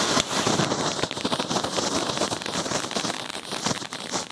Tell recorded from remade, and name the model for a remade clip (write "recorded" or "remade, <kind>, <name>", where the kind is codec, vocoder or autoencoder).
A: recorded